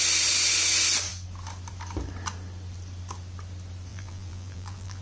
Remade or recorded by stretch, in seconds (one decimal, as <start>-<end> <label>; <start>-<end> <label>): 0.0-3.9 recorded; 3.9-5.0 remade